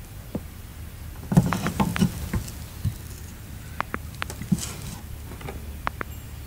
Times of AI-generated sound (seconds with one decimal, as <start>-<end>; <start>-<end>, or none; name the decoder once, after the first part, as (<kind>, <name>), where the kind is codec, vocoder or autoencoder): none